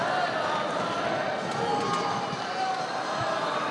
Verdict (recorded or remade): recorded